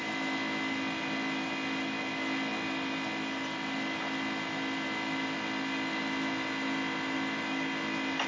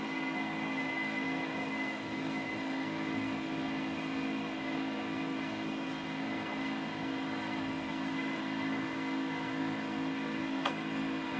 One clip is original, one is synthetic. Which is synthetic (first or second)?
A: second